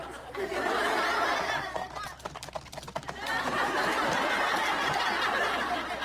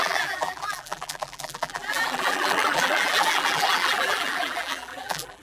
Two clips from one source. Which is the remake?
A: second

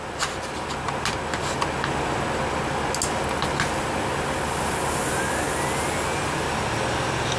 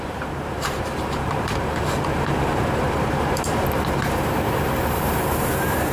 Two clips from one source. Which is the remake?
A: second